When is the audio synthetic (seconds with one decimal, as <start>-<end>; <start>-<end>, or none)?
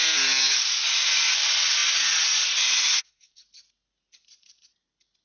2.9-3.4